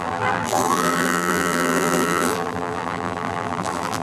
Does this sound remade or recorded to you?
remade